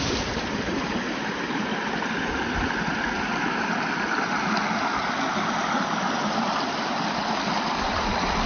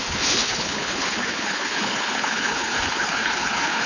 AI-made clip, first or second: second